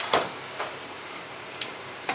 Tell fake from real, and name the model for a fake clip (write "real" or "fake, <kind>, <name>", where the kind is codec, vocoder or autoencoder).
fake, vocoder, BigVGAN v2